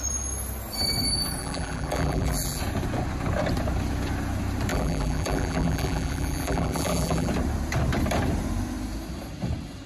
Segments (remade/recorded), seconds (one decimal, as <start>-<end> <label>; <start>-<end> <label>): 0.0-1.4 recorded; 1.4-2.6 remade; 2.6-4.7 recorded; 4.7-7.3 remade; 7.3-9.9 recorded